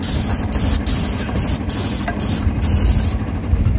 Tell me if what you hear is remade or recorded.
recorded